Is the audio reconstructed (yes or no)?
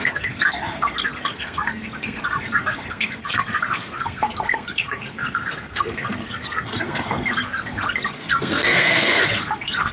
yes